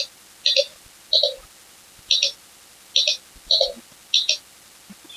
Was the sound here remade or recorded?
recorded